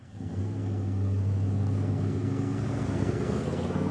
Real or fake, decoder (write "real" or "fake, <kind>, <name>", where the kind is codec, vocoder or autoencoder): fake, codec, SNAC